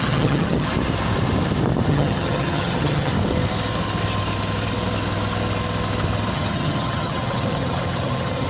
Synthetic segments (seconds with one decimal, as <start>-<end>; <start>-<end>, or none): 0.0-0.7; 1.9-3.1; 6.3-8.5